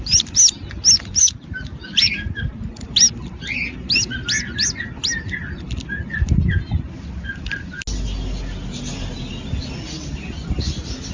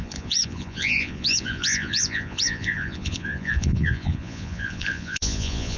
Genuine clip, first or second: first